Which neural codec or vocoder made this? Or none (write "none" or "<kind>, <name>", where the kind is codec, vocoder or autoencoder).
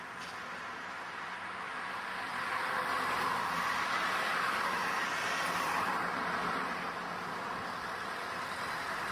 none